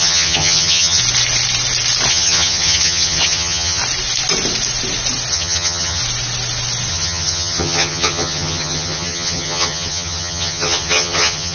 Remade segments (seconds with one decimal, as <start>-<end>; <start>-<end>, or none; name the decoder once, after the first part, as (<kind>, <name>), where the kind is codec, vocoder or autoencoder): 0.0-1.0 (vocoder, HiFi-GAN); 2.1-3.8; 5.3-6.0; 6.9-11.5